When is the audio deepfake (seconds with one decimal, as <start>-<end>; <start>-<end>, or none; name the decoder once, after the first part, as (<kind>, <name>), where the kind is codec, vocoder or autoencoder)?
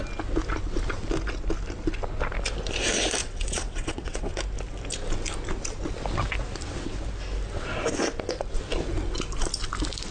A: 3.2-4.3 (vocoder, WaveNeXt)